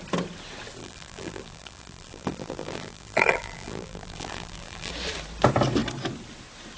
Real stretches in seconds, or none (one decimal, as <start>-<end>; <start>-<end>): 0.0-0.8; 4.9-6.8